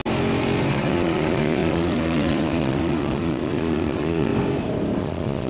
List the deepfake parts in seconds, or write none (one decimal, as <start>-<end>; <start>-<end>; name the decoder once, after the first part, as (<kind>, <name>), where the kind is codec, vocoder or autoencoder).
0.7-4.3 (vocoder, Vocos); 5.0-5.5